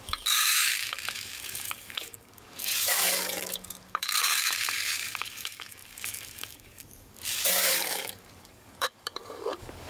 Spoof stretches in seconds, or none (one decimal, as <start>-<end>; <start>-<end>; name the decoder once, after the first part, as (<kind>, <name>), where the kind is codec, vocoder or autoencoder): 0.0-9.9 (codec, DAC)